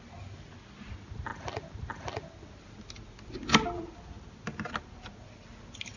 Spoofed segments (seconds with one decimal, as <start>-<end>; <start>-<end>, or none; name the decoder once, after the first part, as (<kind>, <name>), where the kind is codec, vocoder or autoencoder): none